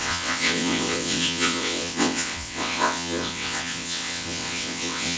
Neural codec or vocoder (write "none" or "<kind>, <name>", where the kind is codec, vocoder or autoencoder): vocoder, WaveNeXt